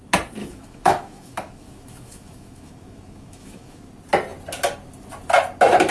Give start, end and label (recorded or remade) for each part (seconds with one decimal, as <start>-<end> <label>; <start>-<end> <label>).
0.0-0.4 recorded; 0.4-3.9 remade; 3.9-5.9 recorded